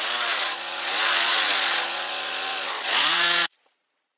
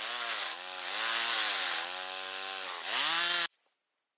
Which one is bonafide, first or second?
second